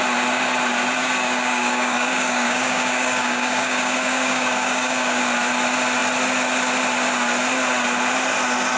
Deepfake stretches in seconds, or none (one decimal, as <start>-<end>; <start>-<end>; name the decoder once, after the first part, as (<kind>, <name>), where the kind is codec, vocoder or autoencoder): 1.0-5.2 (codec, DAC)